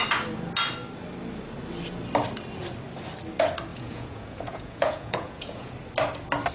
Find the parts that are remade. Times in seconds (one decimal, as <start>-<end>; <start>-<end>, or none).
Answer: 3.7-5.7